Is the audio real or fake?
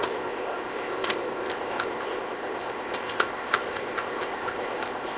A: fake